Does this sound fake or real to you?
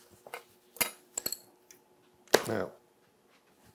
real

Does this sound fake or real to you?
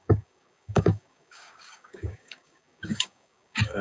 fake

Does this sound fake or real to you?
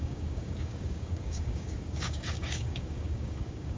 fake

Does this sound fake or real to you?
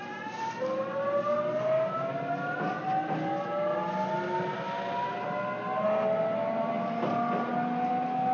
real